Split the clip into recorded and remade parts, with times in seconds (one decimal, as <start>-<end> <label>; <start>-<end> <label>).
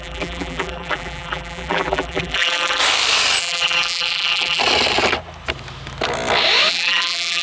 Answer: 0.0-2.8 remade; 2.8-3.4 recorded; 3.4-4.6 remade; 4.6-6.7 recorded; 6.7-7.4 remade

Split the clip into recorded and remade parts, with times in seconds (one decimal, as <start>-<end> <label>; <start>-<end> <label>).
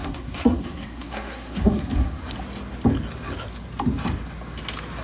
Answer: 0.0-2.2 remade; 2.2-5.0 recorded